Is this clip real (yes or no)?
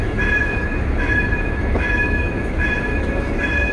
no